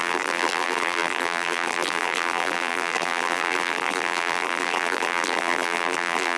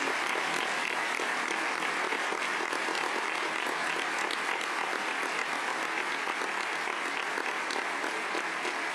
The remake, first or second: first